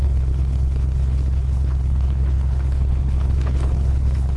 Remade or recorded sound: remade